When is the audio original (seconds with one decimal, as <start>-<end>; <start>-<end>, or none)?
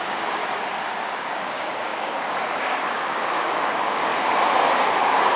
0.4-1.0; 4.1-5.4